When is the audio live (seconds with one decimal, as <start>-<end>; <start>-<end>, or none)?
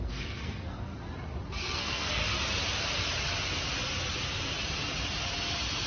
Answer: 0.9-1.5; 2.2-5.9